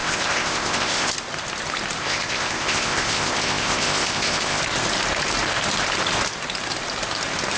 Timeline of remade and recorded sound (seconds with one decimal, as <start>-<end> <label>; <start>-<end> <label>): 0.0-1.1 remade; 1.1-2.0 recorded; 2.0-4.6 remade; 4.6-7.6 recorded